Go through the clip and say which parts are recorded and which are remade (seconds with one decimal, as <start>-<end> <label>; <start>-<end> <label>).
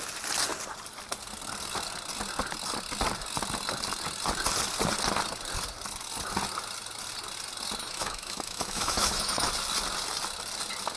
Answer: 0.0-7.8 recorded; 7.8-9.5 remade; 9.5-11.0 recorded